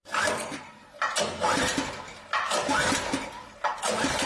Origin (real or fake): real